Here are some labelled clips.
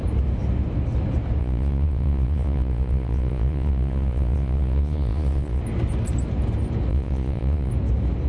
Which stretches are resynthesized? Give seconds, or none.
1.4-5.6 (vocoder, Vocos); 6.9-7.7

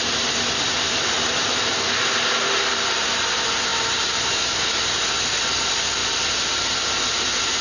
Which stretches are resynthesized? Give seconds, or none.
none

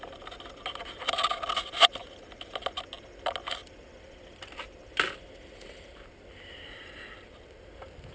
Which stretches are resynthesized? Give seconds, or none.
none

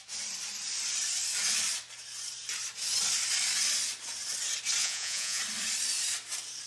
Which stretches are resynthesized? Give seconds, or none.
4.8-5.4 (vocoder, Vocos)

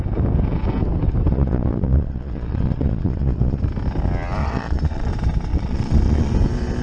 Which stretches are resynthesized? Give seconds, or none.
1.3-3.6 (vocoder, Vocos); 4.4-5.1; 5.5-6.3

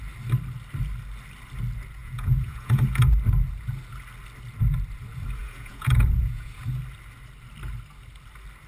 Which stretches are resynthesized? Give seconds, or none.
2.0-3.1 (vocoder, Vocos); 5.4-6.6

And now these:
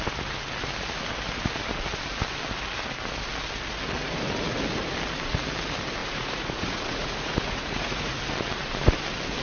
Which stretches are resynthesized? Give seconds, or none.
6.0-8.1 (vocoder, Vocos)

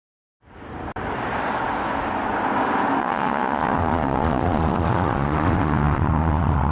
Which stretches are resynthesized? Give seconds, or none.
3.0-6.7 (vocoder, Vocos)